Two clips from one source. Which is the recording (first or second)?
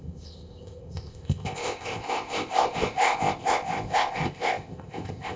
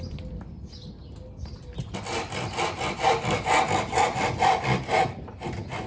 second